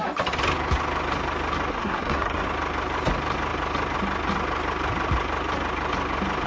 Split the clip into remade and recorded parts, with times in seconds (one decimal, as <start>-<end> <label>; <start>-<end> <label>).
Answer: 0.0-1.7 recorded; 1.7-2.4 remade; 2.4-6.5 recorded